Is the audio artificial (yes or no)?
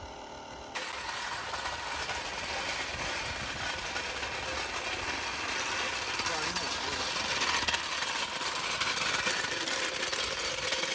no